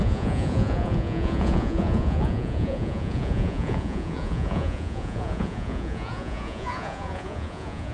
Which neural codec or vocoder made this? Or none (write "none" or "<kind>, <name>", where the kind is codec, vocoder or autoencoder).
vocoder, Vocos